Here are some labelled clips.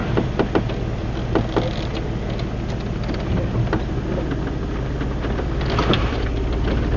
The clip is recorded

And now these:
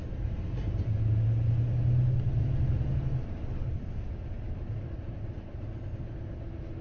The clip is recorded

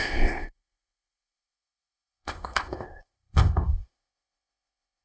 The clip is remade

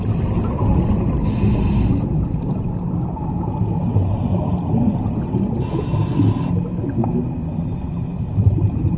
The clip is recorded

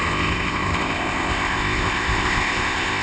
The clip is remade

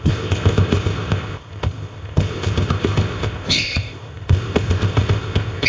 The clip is remade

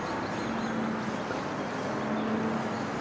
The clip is recorded